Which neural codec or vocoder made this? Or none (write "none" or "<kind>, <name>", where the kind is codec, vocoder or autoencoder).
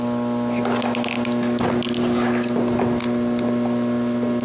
none